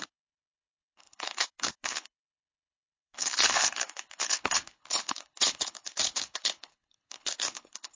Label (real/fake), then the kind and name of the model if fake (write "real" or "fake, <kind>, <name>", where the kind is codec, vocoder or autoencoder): fake, codec, HILCodec